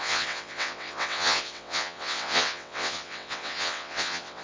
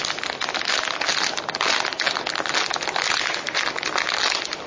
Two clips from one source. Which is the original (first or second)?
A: second